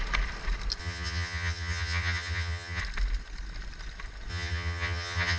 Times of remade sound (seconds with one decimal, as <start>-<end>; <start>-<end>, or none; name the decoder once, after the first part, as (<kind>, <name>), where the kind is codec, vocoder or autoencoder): 0.8-2.8 (vocoder, HiFi-GAN); 4.3-5.4